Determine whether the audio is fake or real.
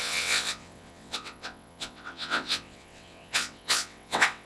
fake